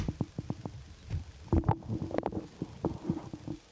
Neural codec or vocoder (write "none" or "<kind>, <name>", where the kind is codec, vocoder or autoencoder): none